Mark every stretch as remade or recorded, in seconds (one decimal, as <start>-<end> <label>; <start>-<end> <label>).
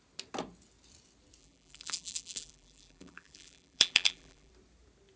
0.0-1.4 recorded; 1.4-4.5 remade; 4.5-5.2 recorded